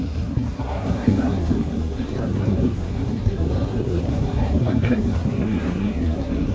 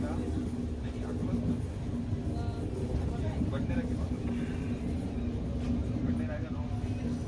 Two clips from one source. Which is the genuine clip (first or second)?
second